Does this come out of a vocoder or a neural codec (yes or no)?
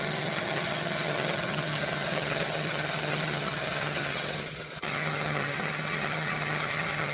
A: yes